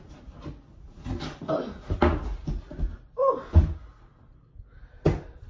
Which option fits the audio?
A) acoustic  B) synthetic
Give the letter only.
A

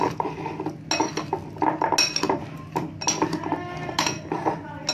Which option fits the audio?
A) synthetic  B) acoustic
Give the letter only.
B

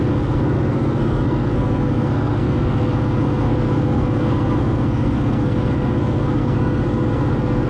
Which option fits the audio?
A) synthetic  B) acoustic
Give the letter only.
A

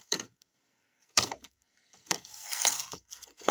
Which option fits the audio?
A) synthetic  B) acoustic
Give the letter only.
A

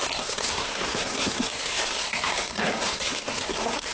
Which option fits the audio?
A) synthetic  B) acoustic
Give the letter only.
A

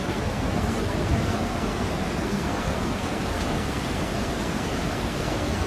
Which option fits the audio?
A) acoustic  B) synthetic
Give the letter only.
B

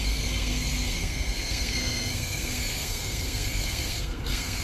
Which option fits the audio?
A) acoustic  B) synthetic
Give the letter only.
B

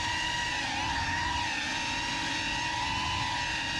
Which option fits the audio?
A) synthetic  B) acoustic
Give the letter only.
B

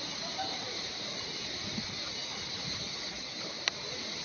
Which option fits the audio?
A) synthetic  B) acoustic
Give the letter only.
B